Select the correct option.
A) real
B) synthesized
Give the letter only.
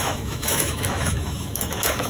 B